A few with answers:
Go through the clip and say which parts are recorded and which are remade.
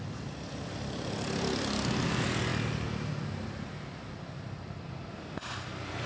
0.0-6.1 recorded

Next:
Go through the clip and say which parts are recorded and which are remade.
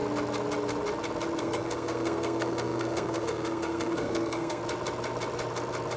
0.0-1.4 recorded; 1.4-4.6 remade; 4.6-6.0 recorded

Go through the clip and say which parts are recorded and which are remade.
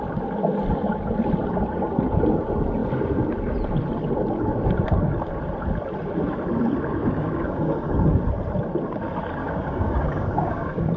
0.0-6.9 recorded; 6.9-7.9 remade; 7.9-9.4 recorded; 9.4-11.0 remade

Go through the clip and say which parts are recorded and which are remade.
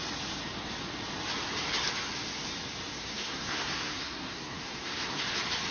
0.0-3.0 recorded; 3.0-5.2 remade; 5.2-5.7 recorded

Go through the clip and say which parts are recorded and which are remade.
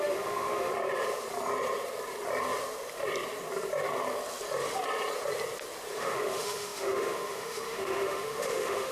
0.0-0.7 remade; 0.7-6.0 recorded; 6.0-8.9 remade